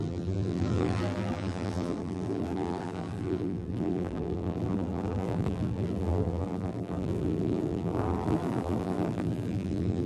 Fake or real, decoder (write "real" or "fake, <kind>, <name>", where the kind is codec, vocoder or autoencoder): fake, vocoder, BigVGAN v2